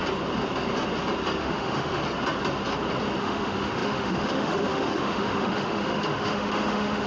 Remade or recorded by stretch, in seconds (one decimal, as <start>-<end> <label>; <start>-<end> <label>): 0.0-1.4 recorded; 1.4-2.0 remade; 2.0-3.2 recorded; 3.2-7.1 remade